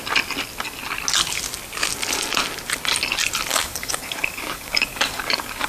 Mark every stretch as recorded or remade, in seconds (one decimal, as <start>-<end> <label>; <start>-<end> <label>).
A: 0.0-3.5 recorded; 3.5-5.7 remade